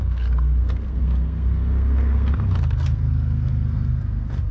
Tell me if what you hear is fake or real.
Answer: fake